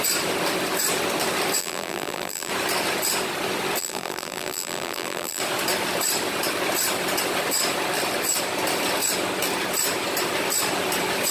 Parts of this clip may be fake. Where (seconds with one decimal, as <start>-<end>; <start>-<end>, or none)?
1.6-2.5; 3.8-5.4